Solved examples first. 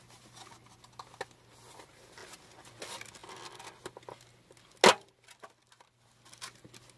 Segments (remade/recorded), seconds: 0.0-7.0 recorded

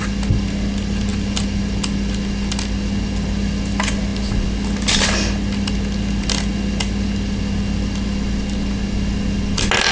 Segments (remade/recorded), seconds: 0.0-9.9 recorded

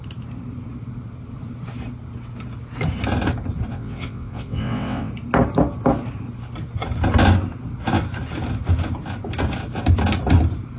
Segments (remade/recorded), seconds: 0.0-3.7 recorded; 3.7-5.1 remade; 5.1-10.8 recorded

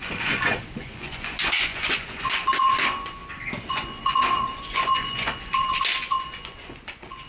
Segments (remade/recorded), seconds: 0.0-3.2 remade; 3.2-3.7 recorded; 3.7-7.3 remade

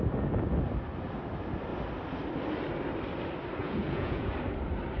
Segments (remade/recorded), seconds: 0.0-3.6 recorded; 3.6-4.3 remade; 4.3-5.0 recorded

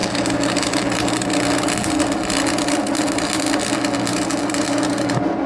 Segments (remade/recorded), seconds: 0.0-5.5 recorded

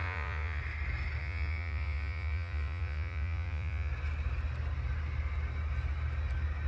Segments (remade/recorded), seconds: 0.0-0.6 remade; 0.6-1.2 recorded; 1.2-3.9 remade; 3.9-6.7 recorded

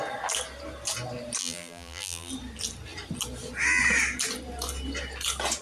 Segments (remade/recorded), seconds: 0.0-1.4 recorded; 1.4-2.3 remade; 2.3-5.6 recorded